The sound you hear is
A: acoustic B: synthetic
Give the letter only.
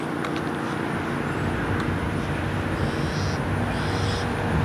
A